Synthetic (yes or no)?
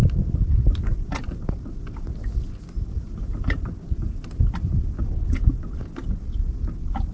no